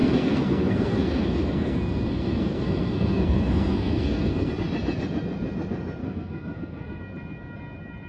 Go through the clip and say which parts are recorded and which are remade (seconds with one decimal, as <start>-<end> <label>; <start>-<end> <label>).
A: 0.0-4.5 remade; 4.5-6.0 recorded; 6.0-7.0 remade; 7.0-8.1 recorded